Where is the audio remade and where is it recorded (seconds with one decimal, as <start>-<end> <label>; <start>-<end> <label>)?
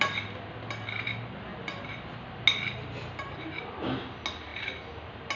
0.0-5.4 recorded